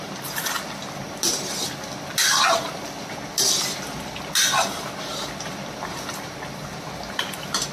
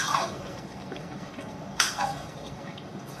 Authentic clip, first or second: first